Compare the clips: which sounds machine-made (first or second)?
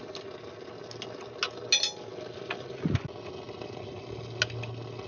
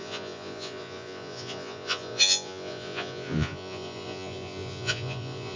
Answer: second